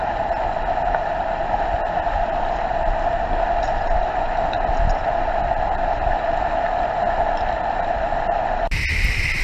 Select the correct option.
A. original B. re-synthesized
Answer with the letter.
A